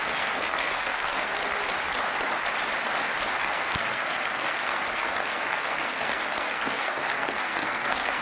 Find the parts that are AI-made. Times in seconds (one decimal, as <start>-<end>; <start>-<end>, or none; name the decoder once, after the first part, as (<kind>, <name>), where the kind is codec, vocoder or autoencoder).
0.0-1.4 (codec, SNAC); 3.3-8.2